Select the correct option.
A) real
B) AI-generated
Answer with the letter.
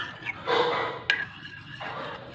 A